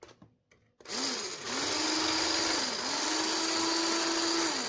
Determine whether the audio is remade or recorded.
recorded